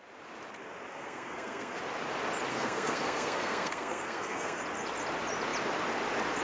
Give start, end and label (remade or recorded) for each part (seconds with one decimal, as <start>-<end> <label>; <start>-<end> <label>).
0.0-0.9 recorded; 0.9-1.8 remade; 1.8-2.5 recorded; 2.5-4.6 remade; 4.6-6.4 recorded

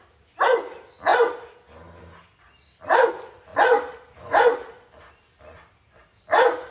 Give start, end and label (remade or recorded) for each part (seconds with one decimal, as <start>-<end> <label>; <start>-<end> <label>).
0.0-6.7 recorded

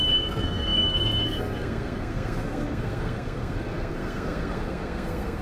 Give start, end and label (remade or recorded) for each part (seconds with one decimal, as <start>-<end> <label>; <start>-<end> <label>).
0.0-5.4 remade

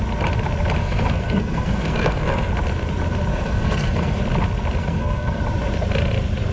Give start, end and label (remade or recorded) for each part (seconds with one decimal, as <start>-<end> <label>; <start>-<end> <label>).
0.0-0.8 recorded; 0.8-2.5 remade; 2.5-3.3 recorded; 3.3-4.2 remade; 4.2-4.8 recorded; 4.8-5.4 remade; 5.4-6.5 recorded

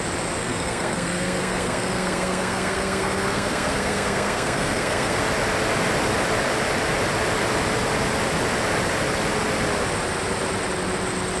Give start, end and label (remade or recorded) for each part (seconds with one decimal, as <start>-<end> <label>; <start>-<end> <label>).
0.0-0.4 recorded; 0.4-5.2 remade; 5.2-11.4 recorded

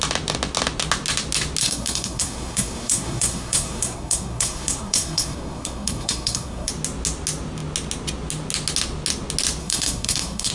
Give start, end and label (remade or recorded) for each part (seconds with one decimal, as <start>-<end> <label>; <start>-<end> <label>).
0.0-1.6 recorded; 1.6-6.7 remade; 6.7-9.6 recorded; 9.6-10.5 remade

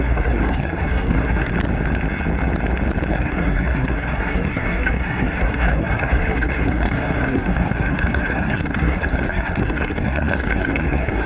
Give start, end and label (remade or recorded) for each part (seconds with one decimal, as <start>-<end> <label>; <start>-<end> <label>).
0.0-1.5 remade; 1.5-3.1 recorded; 3.1-11.3 remade